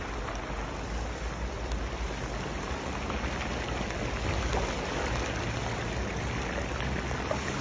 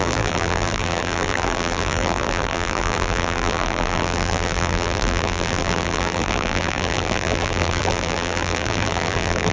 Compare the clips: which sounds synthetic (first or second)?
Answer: second